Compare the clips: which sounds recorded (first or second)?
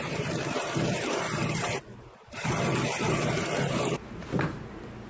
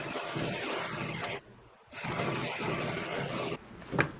second